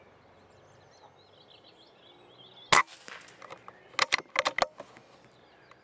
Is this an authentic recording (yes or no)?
yes